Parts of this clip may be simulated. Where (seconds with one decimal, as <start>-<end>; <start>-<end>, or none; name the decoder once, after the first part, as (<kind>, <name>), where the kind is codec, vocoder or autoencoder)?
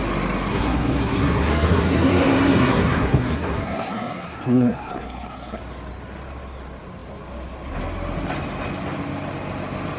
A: 0.5-5.6 (codec, SNAC)